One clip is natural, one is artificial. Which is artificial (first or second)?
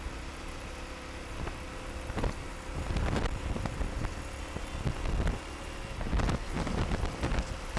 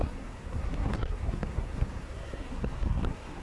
second